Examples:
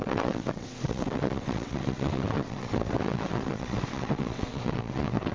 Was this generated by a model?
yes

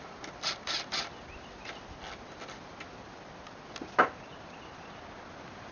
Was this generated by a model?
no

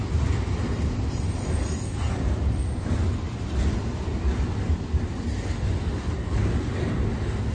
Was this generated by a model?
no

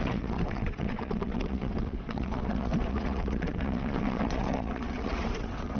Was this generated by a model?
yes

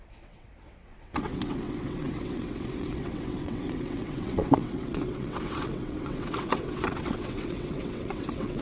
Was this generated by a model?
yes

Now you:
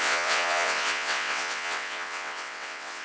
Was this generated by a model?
yes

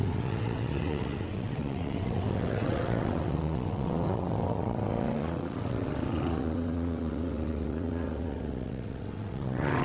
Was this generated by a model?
yes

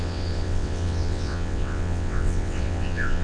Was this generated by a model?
yes